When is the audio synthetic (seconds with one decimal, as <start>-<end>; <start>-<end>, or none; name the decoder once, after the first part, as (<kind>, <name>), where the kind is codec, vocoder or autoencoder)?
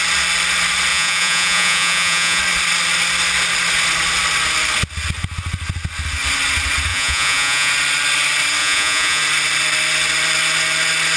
0.9-2.4 (vocoder, Vocos); 6.9-7.7; 8.6-9.2